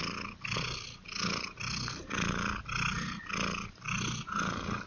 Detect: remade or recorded recorded